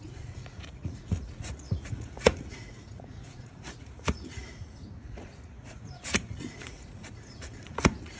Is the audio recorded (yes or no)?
no